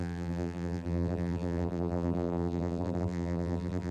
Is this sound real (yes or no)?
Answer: no